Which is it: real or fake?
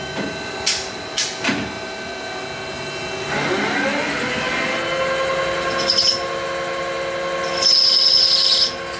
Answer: real